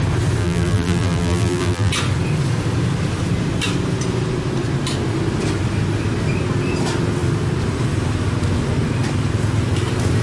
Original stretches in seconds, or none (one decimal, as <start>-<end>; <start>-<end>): 0.0-0.4; 1.9-10.2